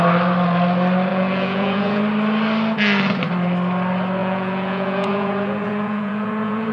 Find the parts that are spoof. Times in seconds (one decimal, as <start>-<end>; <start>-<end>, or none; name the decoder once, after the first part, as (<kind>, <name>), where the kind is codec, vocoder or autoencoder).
1.1-2.0 (vocoder, Vocos); 4.2-6.7